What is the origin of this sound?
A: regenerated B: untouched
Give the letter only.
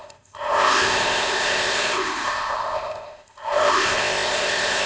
A